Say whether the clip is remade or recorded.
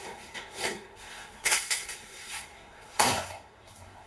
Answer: remade